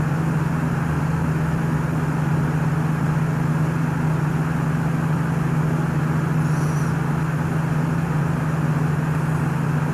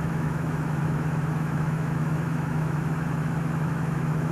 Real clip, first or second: first